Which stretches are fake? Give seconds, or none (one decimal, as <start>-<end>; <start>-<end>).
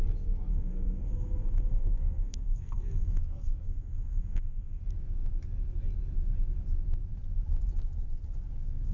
0.5-4.8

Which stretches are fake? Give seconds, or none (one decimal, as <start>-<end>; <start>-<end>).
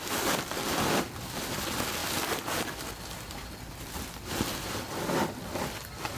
none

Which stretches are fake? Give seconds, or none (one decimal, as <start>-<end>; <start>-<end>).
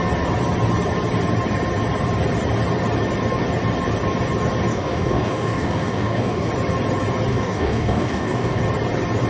4.7-6.5; 7.3-8.6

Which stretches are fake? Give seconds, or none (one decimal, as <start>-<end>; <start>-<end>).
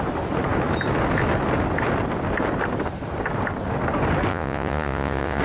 4.3-5.4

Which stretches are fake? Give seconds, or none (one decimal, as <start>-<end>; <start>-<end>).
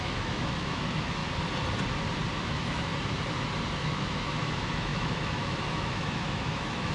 0.0-1.2; 2.4-2.9; 3.8-6.9